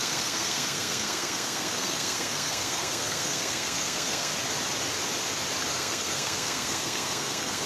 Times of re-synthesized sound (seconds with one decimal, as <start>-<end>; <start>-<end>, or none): 0.0-4.3; 5.7-7.7